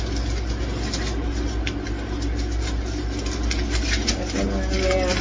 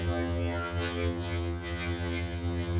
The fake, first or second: second